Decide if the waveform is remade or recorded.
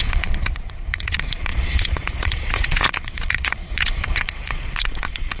remade